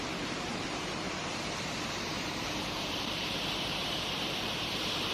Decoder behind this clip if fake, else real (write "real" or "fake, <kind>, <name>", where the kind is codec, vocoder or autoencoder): fake, vocoder, BigVGAN v2